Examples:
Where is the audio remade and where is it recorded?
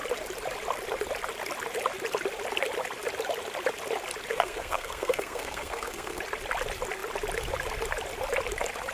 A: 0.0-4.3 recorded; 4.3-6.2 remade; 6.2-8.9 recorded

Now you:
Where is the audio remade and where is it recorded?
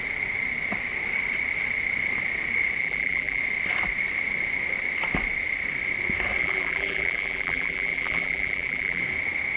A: 0.0-2.8 recorded; 2.8-3.4 remade; 3.4-6.4 recorded; 6.4-9.0 remade; 9.0-9.6 recorded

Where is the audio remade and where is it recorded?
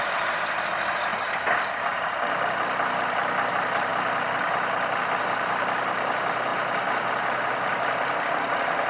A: 0.0-1.1 remade; 1.1-3.5 recorded; 3.5-3.9 remade; 3.9-5.2 recorded; 5.2-6.5 remade; 6.5-8.3 recorded; 8.3-8.9 remade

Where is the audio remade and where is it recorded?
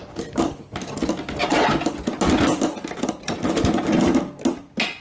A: 0.0-5.0 recorded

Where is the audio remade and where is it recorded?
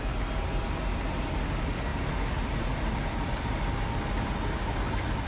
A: 0.0-5.3 recorded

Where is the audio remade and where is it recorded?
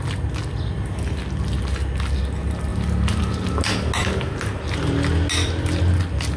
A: 0.0-6.4 recorded